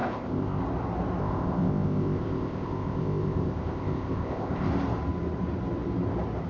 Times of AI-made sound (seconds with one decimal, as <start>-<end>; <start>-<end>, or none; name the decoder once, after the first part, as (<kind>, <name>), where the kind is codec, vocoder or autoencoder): 0.0-0.6 (codec, ZipCodec); 1.2-4.7

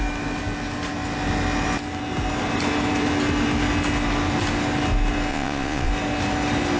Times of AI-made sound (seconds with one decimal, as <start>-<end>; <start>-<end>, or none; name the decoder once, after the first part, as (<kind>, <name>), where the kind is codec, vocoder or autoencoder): 5.3-5.9 (vocoder, Vocos)

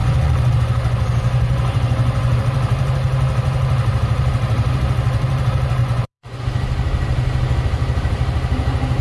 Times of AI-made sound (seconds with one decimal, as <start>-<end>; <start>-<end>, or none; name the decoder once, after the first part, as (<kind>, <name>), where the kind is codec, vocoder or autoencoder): 0.0-2.4 (vocoder, Vocos); 5.8-6.4

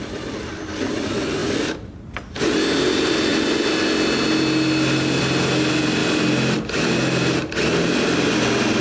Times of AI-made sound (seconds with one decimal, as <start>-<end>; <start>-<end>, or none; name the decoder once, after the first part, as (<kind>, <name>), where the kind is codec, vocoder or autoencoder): none

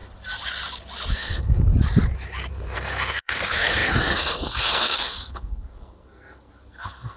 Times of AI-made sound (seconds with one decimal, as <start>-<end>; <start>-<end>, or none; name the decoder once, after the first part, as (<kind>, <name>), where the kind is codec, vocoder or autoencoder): 1.1-1.7 (codec, SNAC); 2.5-7.2

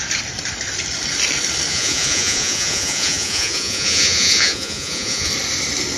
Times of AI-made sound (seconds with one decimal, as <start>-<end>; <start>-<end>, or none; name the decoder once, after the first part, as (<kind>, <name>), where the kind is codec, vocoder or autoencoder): 1.7-5.3 (vocoder, Vocos)

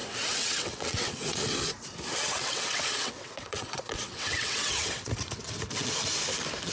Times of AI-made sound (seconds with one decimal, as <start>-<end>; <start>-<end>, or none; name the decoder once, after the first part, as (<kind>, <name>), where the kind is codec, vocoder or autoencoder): 0.0-1.4 (vocoder, WaveNeXt); 2.3-5.1